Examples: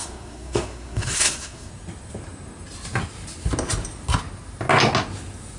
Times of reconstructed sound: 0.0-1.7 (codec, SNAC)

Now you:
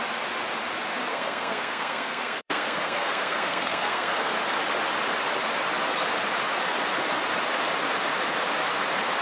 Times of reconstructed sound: 1.1-4.3 (codec, SNAC)

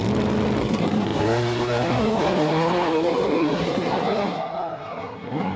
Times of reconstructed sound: 0.6-5.6 (codec, SNAC)

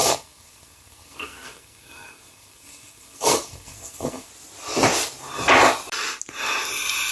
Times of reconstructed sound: 0.0-4.3 (codec, SNAC)

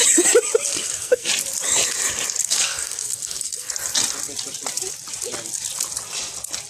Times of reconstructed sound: 0.7-1.3 (codec, SNAC); 2.4-3.7

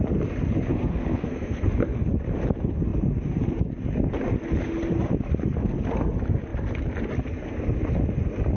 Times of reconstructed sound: 0.7-2.1 (codec, SNAC)

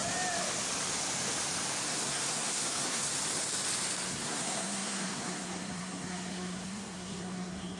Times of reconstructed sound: 1.8-3.1 (codec, SNAC); 4.1-7.8